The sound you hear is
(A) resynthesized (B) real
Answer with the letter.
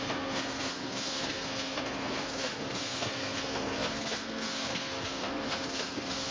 A